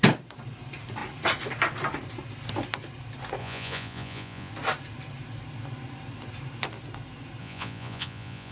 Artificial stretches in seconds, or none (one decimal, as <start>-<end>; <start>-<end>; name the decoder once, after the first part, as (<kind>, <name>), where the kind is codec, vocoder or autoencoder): 3.4-4.5 (vocoder, Vocos); 7.4-8.5